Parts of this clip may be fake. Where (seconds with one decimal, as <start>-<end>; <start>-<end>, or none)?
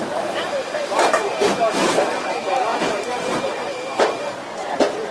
0.0-5.1